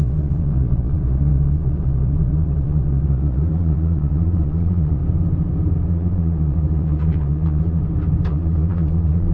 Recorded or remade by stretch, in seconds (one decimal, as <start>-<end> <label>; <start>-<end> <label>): 0.0-5.0 remade; 5.0-5.9 recorded; 5.9-7.8 remade; 7.8-8.3 recorded; 8.3-9.3 remade